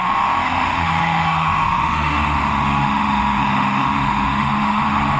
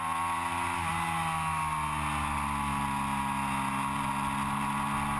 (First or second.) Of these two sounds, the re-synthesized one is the first